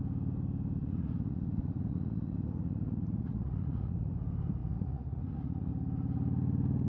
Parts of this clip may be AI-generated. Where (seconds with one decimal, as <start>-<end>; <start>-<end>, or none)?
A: 0.8-4.1; 4.6-5.7